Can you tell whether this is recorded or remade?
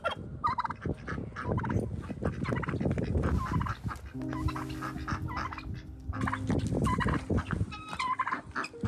recorded